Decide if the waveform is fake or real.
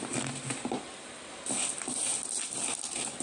real